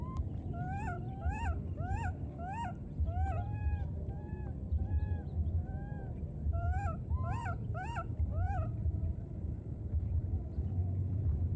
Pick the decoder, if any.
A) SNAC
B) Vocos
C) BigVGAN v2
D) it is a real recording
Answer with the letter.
C